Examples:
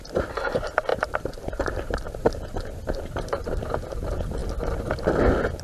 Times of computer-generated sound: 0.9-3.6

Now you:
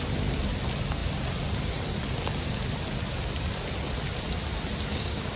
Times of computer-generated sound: 4.9-5.4

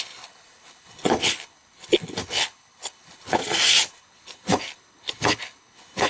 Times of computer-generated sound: 0.0-3.4; 3.9-6.1

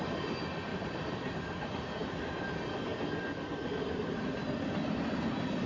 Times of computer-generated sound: 0.7-1.3